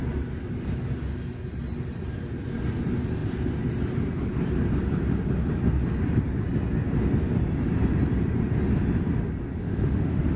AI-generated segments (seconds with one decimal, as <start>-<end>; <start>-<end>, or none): 9.6-10.4

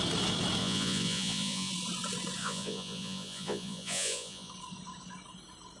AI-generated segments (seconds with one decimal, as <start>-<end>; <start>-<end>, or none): 0.6-1.7; 2.4-4.5